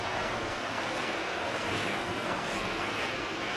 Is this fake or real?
fake